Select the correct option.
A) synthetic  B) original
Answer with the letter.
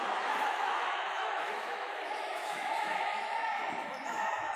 A